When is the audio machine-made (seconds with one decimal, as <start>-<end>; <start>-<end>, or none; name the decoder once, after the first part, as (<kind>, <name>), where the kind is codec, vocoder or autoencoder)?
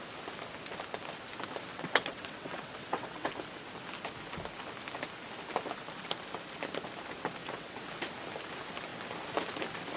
1.7-3.3 (vocoder, WaveNeXt); 7.4-7.9